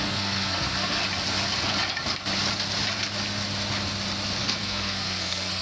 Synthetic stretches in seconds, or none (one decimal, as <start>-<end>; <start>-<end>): 0.0-1.0; 4.4-5.6